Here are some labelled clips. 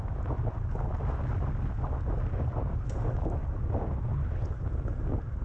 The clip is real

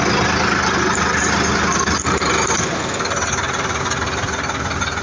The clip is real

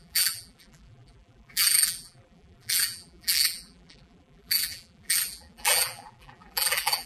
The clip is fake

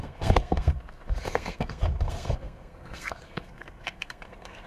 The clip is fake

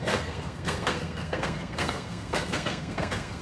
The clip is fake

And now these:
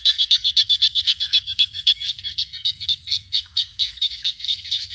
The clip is fake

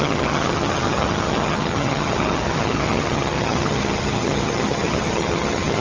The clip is fake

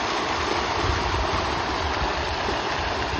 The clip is real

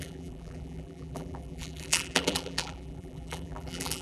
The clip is fake